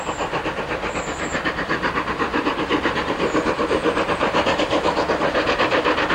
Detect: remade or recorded recorded